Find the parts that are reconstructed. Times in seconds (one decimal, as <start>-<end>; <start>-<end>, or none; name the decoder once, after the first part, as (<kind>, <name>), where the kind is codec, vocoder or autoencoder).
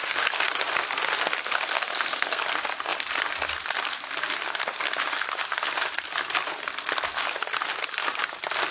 1.4-2.4 (codec, SNAC)